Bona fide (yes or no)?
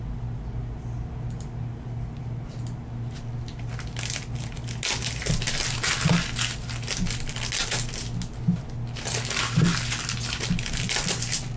yes